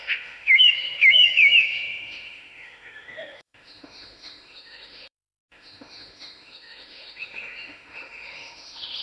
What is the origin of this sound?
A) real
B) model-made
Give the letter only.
B